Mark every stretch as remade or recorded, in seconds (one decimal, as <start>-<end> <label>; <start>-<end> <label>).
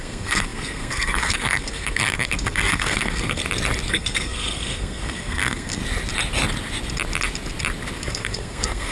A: 0.0-3.4 remade; 3.4-3.9 recorded; 3.9-5.8 remade; 5.8-8.0 recorded; 8.0-8.9 remade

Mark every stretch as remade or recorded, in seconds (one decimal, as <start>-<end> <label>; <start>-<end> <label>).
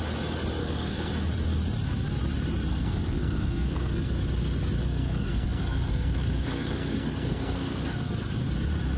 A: 0.0-0.6 recorded; 0.6-1.1 remade; 1.1-2.7 recorded; 2.7-4.1 remade; 4.1-4.8 recorded; 4.8-8.1 remade; 8.1-9.0 recorded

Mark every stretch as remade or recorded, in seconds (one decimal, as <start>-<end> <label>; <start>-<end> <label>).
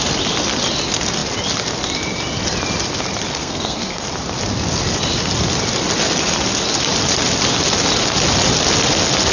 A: 0.0-3.4 recorded; 3.4-4.0 remade; 4.0-9.3 recorded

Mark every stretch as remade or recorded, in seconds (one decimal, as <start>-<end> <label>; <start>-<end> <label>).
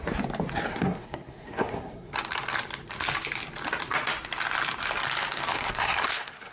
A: 0.0-0.7 recorded; 0.7-2.1 remade; 2.1-5.6 recorded; 5.6-6.5 remade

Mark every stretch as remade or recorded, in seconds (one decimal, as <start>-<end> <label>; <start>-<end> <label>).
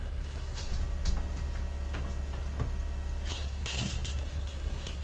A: 0.0-0.7 remade; 0.7-3.3 recorded; 3.3-5.0 remade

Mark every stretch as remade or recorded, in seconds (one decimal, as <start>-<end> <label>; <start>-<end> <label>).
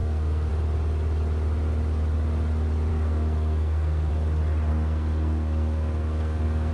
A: 0.0-0.5 remade; 0.5-2.9 recorded; 2.9-4.1 remade; 4.1-4.7 recorded; 4.7-6.7 remade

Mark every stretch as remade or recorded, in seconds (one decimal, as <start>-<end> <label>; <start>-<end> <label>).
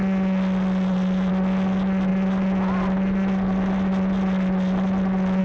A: 0.0-5.4 recorded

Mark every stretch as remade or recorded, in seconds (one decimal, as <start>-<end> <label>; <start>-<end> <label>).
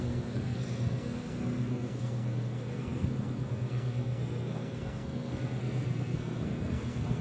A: 0.0-7.2 remade